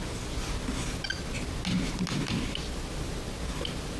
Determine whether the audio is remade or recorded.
recorded